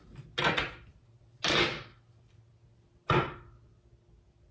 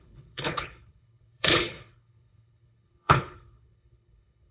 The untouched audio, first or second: first